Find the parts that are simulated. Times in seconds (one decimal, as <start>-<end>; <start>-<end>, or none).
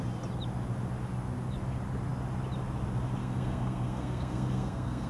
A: 3.2-5.1